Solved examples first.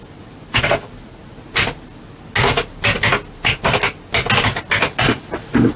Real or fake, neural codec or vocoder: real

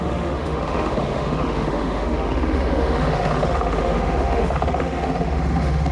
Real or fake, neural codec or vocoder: fake, autoencoder, DAC-VAE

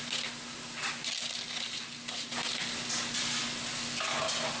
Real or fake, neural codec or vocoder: real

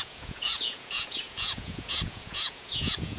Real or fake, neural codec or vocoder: fake, vocoder, Vocos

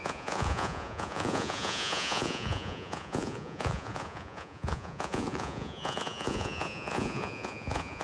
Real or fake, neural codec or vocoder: fake, vocoder, Vocos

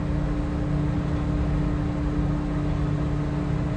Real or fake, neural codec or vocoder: real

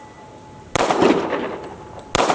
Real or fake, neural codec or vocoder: real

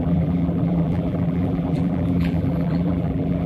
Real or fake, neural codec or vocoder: fake, vocoder, BigVGAN v2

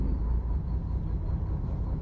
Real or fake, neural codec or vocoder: fake, vocoder, BigVGAN v2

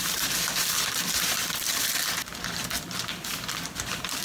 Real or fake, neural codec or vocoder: fake, vocoder, BigVGAN v2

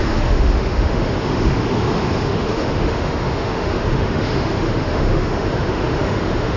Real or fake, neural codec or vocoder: fake, autoencoder, DAC-VAE